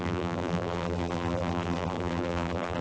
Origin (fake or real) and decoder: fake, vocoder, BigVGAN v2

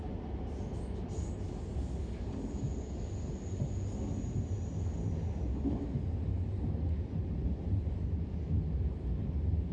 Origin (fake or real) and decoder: real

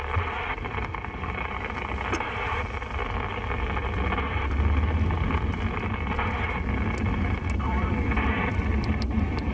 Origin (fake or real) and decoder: real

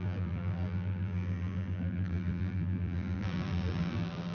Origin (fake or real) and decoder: fake, vocoder, BigVGAN v2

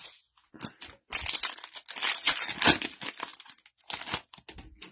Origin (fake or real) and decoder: real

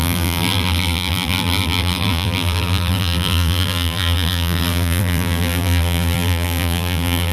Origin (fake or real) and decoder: fake, vocoder, BigVGAN v2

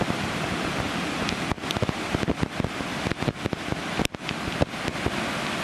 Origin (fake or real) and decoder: real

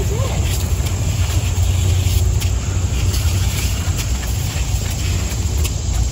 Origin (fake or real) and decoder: real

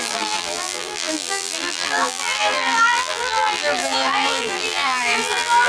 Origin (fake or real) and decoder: fake, vocoder, BigVGAN v2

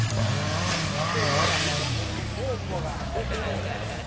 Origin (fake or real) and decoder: real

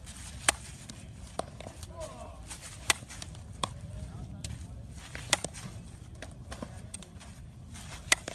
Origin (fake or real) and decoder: fake, vocoder, BigVGAN v2